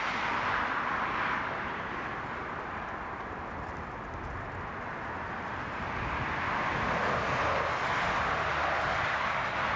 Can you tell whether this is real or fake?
real